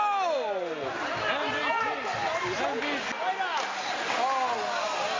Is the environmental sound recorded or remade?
recorded